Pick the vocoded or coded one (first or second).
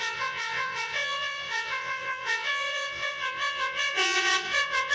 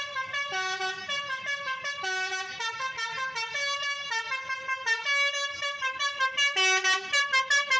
first